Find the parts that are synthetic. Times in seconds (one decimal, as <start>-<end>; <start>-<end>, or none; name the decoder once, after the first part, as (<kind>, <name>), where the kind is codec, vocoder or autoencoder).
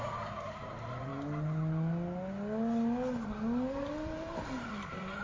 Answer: 0.0-1.1 (vocoder, BigVGAN v2); 3.7-5.2